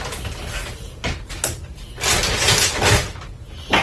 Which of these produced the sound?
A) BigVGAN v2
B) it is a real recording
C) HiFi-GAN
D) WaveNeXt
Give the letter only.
B